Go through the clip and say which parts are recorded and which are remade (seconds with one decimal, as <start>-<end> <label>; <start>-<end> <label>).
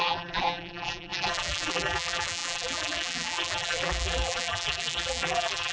0.0-5.7 remade